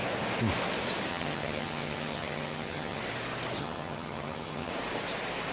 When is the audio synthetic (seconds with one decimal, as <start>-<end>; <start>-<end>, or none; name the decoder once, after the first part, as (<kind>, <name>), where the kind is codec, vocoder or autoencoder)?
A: 1.1-3.0 (vocoder, HiFi-GAN); 3.6-4.7

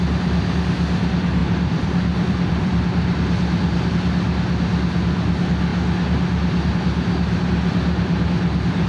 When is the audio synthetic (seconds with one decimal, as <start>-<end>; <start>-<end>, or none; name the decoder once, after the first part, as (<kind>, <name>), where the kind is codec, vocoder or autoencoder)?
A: 1.4-3.9 (vocoder, BigVGAN v2)

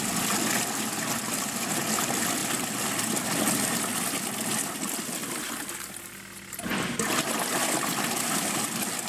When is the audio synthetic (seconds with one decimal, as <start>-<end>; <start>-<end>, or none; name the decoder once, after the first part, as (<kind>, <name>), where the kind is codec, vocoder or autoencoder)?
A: none

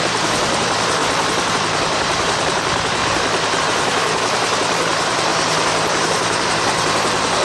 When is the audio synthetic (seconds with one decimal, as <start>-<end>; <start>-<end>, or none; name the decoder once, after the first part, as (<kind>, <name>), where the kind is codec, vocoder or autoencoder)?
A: 0.0-3.0 (vocoder, BigVGAN v2); 3.6-7.4

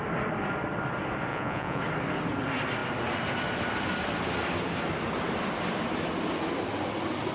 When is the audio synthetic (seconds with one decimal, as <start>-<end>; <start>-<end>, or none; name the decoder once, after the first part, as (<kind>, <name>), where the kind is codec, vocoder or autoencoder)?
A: 1.3-1.8 (vocoder, Vocos)

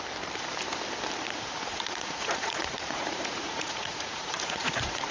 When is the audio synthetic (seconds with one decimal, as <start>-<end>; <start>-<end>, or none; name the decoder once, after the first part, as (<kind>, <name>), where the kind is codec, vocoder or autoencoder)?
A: 1.7-5.1 (vocoder, Vocos)